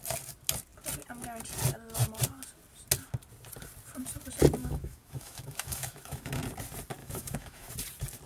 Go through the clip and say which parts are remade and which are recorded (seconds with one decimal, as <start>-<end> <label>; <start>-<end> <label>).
0.0-4.6 recorded; 4.6-6.4 remade; 6.4-7.0 recorded; 7.0-7.7 remade; 7.7-8.3 recorded